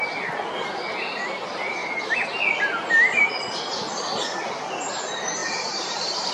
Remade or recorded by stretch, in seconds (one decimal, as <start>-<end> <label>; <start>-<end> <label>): 0.0-5.4 recorded; 5.4-6.3 remade